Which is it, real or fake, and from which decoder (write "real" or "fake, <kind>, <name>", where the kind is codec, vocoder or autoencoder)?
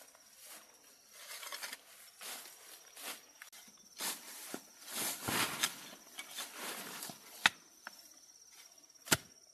real